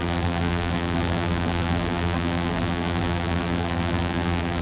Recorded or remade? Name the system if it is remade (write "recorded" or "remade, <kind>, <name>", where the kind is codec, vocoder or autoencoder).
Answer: remade, vocoder, BigVGAN v2